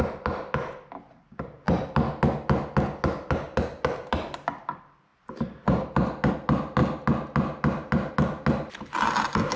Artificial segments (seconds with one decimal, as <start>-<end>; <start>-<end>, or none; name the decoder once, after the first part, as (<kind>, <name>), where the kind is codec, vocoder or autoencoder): none